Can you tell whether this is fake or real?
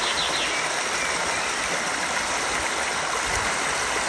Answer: real